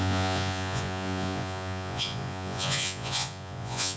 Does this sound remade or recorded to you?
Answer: remade